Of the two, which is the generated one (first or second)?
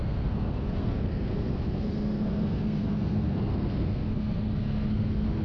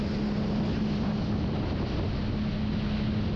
first